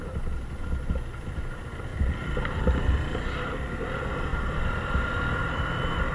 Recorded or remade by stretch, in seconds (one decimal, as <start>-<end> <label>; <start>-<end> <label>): 0.0-1.9 recorded; 1.9-2.6 remade; 2.6-4.3 recorded; 4.3-5.6 remade; 5.6-6.1 recorded